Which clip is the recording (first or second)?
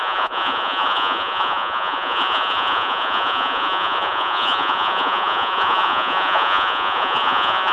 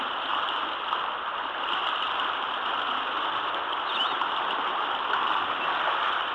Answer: second